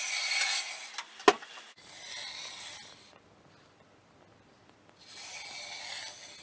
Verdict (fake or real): real